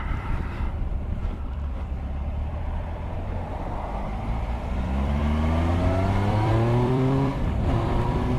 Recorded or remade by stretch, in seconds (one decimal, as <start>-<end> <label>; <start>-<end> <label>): 0.0-8.4 remade